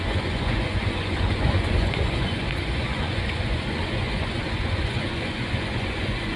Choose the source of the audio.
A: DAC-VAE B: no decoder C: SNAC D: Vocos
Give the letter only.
D